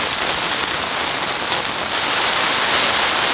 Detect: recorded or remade recorded